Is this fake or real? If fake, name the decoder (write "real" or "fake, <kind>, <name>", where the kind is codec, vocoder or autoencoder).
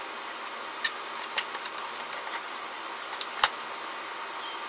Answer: real